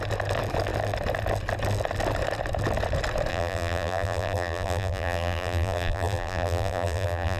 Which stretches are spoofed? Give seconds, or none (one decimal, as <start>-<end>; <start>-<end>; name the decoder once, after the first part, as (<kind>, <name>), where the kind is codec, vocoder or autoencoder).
3.3-7.4 (vocoder, BigVGAN v2)